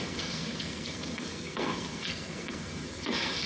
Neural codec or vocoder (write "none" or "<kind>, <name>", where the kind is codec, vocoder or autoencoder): codec, SNAC